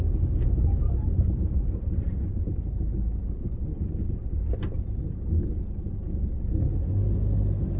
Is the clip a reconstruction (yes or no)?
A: no